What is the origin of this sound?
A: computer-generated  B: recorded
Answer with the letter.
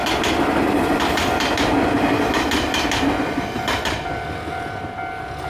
B